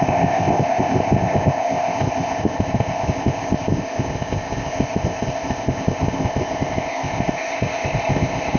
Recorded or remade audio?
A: remade